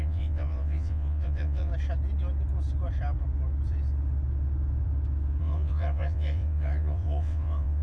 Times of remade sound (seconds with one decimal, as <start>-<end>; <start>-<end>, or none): 0.0-1.7; 5.4-7.8